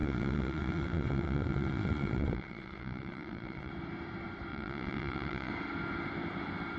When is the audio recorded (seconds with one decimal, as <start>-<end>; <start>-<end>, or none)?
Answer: 3.7-4.5; 5.5-6.8